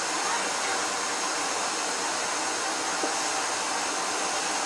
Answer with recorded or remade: recorded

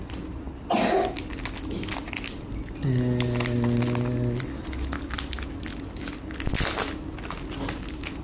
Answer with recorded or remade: recorded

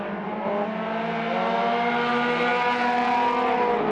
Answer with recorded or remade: recorded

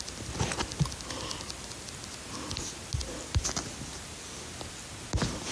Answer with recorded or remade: recorded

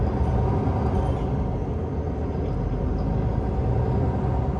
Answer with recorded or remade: recorded